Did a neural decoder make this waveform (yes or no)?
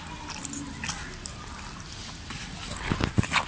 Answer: no